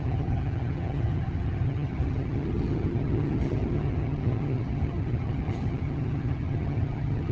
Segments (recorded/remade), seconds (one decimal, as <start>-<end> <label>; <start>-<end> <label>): 0.0-7.3 remade